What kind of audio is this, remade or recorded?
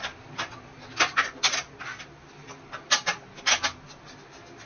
recorded